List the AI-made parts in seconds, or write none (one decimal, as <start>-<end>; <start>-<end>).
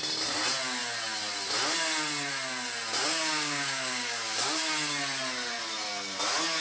3.0-4.6